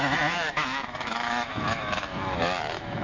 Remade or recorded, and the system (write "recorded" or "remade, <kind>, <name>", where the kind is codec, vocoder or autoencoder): remade, autoencoder, DAC-VAE